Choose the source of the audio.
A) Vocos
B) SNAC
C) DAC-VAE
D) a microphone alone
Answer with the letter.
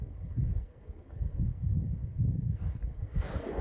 B